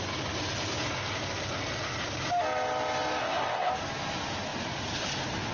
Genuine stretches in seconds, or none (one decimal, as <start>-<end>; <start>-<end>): 0.0-3.2; 3.7-5.5